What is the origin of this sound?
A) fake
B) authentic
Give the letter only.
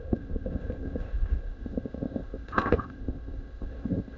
A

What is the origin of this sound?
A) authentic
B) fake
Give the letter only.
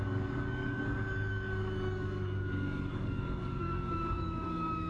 B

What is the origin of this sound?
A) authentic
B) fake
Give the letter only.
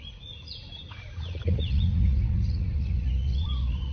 B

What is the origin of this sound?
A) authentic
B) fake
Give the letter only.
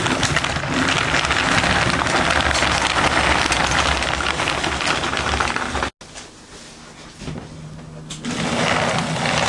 A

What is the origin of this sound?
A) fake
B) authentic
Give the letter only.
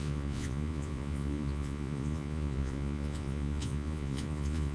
A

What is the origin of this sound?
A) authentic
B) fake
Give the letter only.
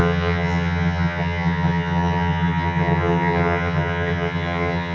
B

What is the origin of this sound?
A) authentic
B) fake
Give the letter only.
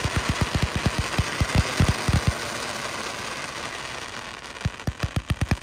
A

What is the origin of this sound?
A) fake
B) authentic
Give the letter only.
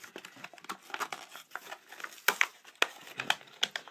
B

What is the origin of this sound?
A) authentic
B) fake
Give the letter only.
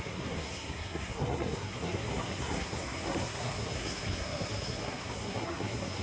B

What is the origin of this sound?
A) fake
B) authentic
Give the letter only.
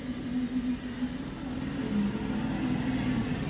B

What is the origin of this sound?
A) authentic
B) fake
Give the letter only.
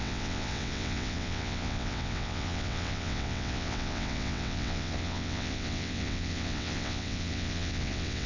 B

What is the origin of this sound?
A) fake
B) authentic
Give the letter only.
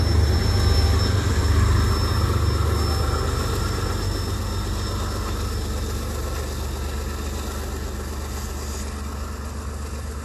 B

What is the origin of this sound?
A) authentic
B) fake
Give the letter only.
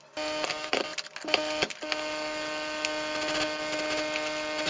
A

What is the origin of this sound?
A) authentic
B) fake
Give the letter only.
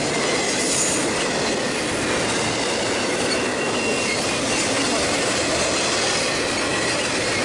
A